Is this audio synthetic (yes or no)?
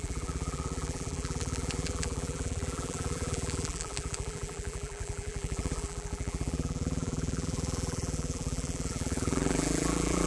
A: yes